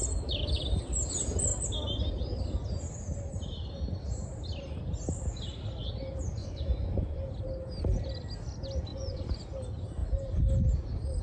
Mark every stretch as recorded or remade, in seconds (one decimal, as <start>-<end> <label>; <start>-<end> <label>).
0.0-6.4 recorded; 6.4-7.2 remade; 7.2-8.9 recorded; 8.9-9.4 remade; 9.4-11.2 recorded